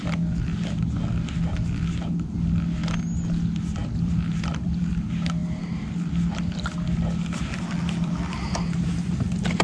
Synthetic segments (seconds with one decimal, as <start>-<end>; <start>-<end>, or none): 3.8-4.9